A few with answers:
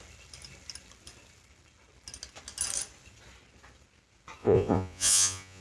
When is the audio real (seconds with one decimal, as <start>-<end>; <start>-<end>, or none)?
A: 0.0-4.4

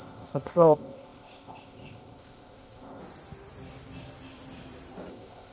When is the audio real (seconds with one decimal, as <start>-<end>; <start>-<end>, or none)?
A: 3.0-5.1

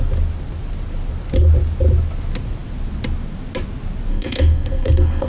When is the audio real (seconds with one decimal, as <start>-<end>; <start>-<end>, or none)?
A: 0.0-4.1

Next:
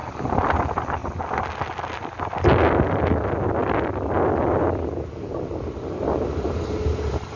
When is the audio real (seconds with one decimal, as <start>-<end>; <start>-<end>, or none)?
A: 0.0-7.4

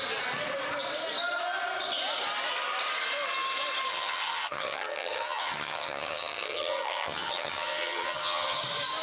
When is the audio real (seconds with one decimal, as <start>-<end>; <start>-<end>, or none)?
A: 0.0-3.9; 8.6-9.0

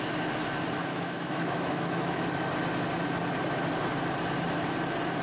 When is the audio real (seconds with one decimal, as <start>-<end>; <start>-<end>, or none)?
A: 0.0-0.8; 2.2-5.2

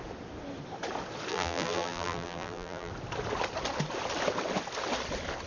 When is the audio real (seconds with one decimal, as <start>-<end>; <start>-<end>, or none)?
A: 0.0-1.3; 2.9-5.5